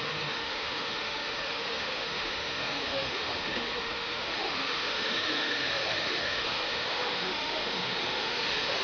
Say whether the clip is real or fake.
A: fake